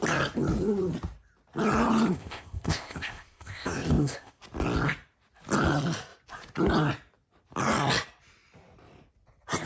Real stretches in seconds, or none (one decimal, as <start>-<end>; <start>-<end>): 0.0-2.1; 4.4-9.7